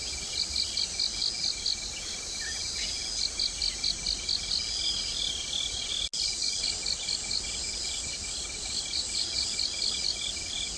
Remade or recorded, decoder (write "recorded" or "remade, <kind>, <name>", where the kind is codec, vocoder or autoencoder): recorded